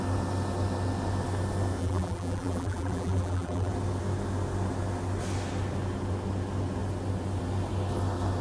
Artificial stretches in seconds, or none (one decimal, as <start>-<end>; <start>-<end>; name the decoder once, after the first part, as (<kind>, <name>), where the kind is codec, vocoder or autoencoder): 1.8-3.7 (vocoder, BigVGAN v2)